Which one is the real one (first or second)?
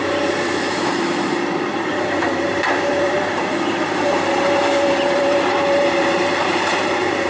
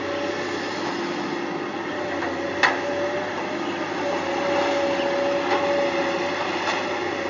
second